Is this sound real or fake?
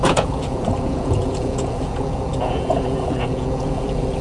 fake